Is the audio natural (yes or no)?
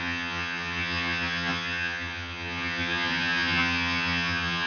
no